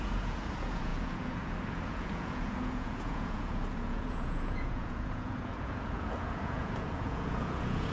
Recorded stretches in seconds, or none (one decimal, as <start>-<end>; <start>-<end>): none

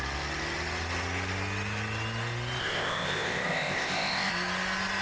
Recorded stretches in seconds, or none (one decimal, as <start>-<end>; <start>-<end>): 0.0-2.6; 4.3-5.0

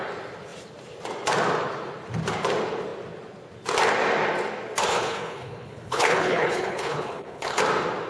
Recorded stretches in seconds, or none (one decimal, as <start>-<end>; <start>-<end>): 0.0-4.9; 7.6-8.1

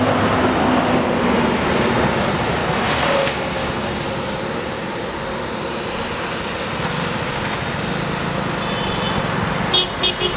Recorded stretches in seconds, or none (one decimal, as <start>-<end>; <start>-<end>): 0.0-2.6; 4.0-10.4

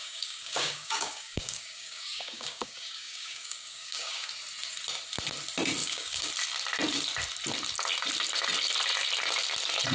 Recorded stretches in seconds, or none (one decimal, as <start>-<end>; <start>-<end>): 4.3-5.8; 6.3-9.9

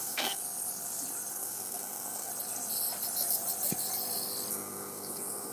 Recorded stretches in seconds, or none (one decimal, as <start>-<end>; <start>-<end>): 0.4-1.3; 2.3-4.5